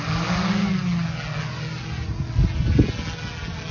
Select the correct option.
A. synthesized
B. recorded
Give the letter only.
B